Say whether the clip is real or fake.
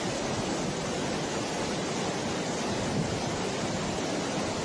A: real